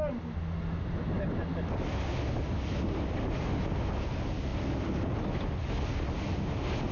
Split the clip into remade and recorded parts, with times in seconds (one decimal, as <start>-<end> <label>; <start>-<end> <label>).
0.0-6.9 recorded